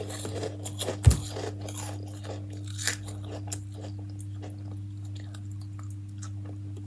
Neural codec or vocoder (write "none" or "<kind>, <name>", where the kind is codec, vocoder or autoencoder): none